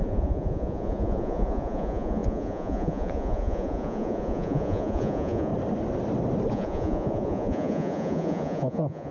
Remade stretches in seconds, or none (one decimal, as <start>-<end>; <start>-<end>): 0.0-5.5; 6.5-9.1